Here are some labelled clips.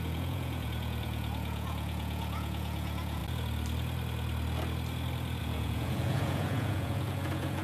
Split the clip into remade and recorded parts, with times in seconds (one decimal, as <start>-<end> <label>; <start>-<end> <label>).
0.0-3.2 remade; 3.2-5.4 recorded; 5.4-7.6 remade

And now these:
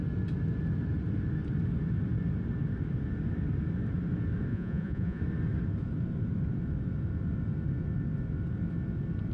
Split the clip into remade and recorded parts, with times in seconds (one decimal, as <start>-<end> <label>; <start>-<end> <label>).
0.0-4.5 recorded; 4.5-5.2 remade; 5.2-9.3 recorded

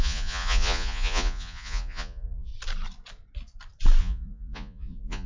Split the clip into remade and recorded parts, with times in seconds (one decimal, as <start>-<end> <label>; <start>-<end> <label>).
0.0-2.5 remade; 2.5-4.0 recorded; 4.0-5.3 remade

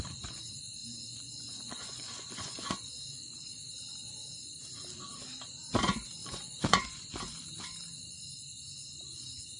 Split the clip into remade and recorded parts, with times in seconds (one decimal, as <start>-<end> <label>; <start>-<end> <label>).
0.0-0.8 recorded; 0.8-3.4 remade; 3.4-6.2 recorded; 6.2-7.1 remade; 7.1-9.6 recorded

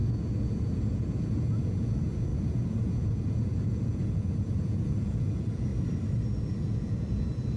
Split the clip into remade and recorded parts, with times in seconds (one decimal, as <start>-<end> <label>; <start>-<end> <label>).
0.0-5.7 remade; 5.7-6.5 recorded; 6.5-7.6 remade

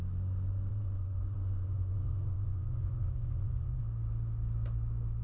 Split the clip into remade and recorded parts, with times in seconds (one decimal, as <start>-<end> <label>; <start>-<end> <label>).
0.0-0.7 recorded; 0.7-3.8 remade; 3.8-5.2 recorded

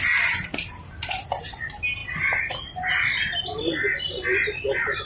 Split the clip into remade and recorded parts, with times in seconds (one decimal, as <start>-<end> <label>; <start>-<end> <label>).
0.0-5.0 recorded